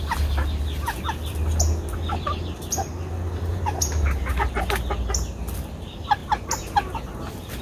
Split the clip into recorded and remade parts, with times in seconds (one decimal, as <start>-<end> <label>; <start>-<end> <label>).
0.0-3.5 recorded; 3.5-4.5 remade; 4.5-7.6 recorded